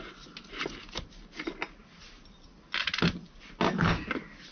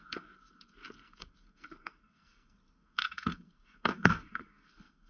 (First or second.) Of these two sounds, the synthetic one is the second